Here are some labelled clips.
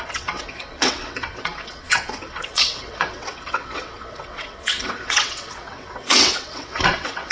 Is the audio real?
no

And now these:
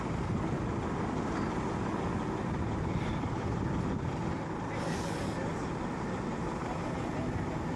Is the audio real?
yes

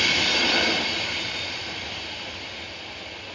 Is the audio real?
yes